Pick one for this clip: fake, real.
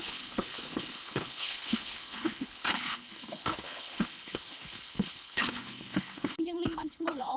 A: fake